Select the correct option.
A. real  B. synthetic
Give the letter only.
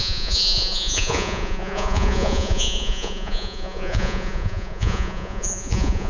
B